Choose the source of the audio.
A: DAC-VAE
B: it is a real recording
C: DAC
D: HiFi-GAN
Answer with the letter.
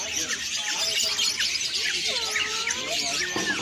B